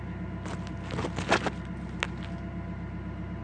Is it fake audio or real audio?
real